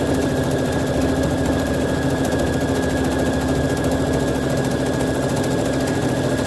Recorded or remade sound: recorded